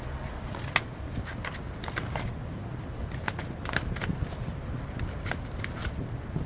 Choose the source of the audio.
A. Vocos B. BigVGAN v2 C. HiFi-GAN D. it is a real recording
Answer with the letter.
D